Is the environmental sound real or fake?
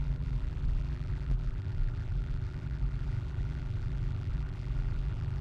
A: fake